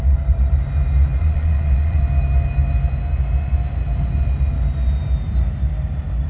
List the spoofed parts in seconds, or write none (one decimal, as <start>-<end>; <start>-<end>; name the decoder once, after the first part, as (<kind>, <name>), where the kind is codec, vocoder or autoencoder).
1.2-2.0 (vocoder, Vocos)